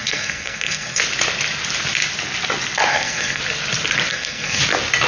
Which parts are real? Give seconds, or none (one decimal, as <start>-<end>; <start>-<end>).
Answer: 1.0-2.9; 3.4-4.1; 4.6-5.1